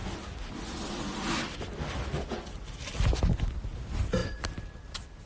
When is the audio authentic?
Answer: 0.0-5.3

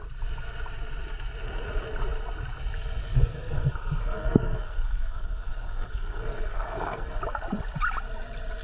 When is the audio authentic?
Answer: 0.0-3.0; 7.2-8.6

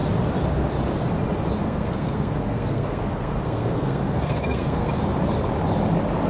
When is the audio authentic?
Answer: 0.0-1.6; 4.9-6.3

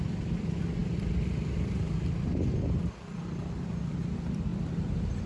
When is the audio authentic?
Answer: 0.0-5.3